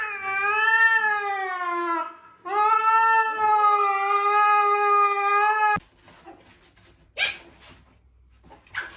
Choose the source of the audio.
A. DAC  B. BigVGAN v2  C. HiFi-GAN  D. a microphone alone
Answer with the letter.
D